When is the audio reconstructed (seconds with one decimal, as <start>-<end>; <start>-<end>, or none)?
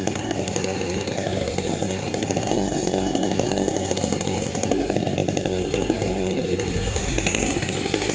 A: 0.0-8.1